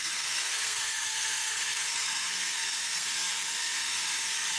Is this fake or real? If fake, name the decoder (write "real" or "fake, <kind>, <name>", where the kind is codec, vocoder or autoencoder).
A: fake, codec, SNAC